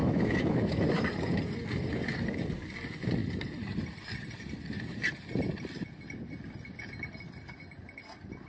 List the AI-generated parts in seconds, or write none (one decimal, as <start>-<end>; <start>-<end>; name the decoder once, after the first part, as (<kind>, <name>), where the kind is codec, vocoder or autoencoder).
0.0-1.1 (autoencoder, DAC-VAE)